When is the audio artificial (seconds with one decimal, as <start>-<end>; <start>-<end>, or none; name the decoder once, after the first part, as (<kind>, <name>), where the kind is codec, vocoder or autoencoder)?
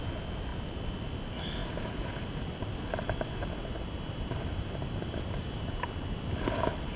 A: none